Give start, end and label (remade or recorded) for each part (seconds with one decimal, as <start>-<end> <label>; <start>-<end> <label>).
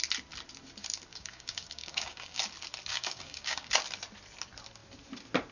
0.0-1.1 recorded; 1.1-2.4 remade; 2.4-2.9 recorded; 2.9-3.7 remade; 3.7-5.5 recorded